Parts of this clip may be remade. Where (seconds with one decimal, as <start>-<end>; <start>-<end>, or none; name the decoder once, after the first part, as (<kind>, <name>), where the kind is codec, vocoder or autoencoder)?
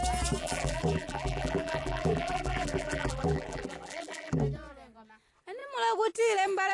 0.4-4.4 (vocoder, BigVGAN v2)